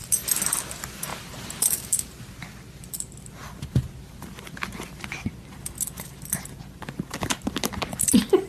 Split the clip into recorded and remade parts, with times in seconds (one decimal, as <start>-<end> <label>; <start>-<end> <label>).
0.0-8.5 recorded